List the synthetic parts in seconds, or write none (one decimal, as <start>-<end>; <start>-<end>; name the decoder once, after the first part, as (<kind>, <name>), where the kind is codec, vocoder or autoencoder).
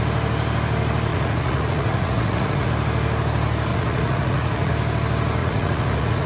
1.1-2.7 (vocoder, Vocos); 3.7-4.7; 5.4-6.3